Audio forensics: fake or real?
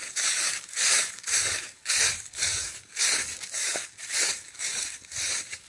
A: fake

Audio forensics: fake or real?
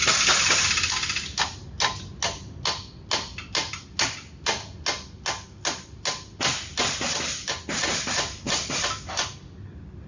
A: real